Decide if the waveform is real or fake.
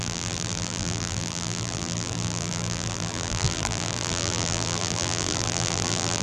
fake